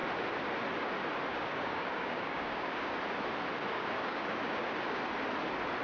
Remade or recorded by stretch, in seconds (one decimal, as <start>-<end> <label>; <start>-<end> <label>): 0.0-1.3 recorded; 1.3-2.9 remade; 2.9-3.7 recorded; 3.7-5.0 remade; 5.0-5.8 recorded